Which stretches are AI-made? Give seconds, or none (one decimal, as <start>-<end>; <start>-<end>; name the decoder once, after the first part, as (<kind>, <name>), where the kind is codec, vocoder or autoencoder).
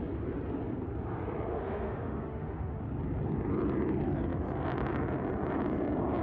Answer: 1.5-2.8 (autoencoder, DAC-VAE)